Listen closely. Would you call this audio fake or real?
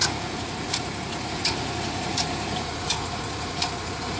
fake